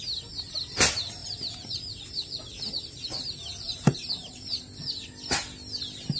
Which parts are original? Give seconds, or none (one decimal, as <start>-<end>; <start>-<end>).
0.0-1.2; 4.6-6.2